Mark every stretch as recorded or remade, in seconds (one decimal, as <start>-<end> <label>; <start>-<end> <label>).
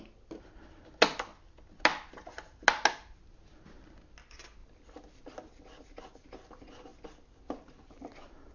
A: 0.0-8.5 recorded